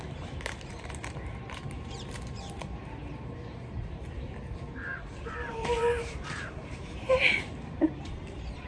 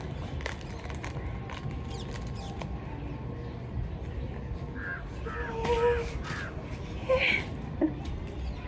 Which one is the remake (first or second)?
first